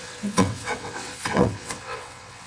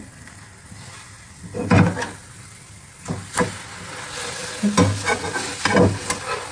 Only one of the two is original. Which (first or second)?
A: second